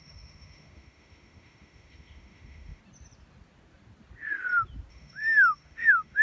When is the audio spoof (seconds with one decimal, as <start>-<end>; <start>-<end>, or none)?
0.0-2.8; 4.9-6.2